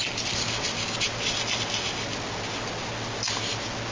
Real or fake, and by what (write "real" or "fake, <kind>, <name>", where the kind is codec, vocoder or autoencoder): real